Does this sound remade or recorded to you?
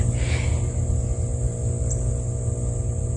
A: recorded